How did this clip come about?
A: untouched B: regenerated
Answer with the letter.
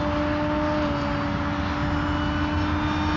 A